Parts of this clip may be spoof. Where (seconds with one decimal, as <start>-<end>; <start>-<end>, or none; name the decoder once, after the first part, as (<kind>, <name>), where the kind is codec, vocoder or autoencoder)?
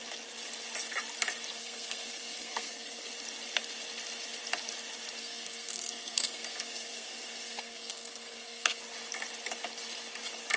1.6-3.1 (codec, SNAC); 5.2-8.8